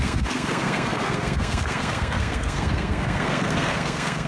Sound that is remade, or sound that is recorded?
remade